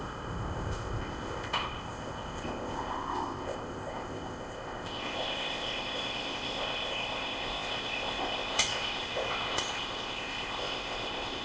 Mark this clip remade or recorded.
remade